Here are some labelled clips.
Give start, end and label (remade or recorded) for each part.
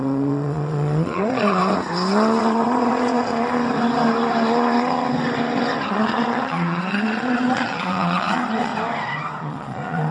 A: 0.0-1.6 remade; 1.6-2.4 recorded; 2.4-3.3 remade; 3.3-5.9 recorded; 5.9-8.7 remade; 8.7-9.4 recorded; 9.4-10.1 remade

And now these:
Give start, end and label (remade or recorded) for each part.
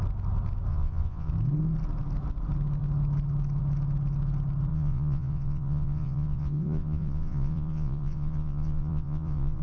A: 0.0-0.7 recorded; 0.7-1.3 remade; 1.3-4.7 recorded; 4.7-9.6 remade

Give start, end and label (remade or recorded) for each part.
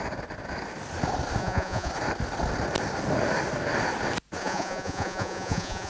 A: 0.0-1.4 recorded; 1.4-1.9 remade; 1.9-4.4 recorded; 4.4-5.9 remade